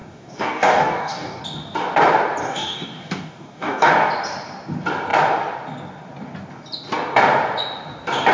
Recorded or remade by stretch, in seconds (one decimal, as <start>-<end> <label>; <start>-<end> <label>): 0.0-1.4 remade; 1.4-2.4 recorded; 2.4-3.9 remade; 3.9-8.3 recorded